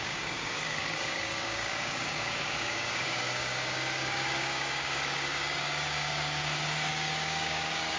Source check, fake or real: fake